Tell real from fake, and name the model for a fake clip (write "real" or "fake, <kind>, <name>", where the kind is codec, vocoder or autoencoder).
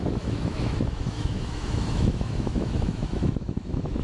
fake, autoencoder, DAC-VAE